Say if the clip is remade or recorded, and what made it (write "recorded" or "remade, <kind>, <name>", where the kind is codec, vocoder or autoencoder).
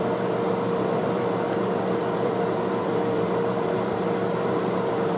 remade, vocoder, BigVGAN v2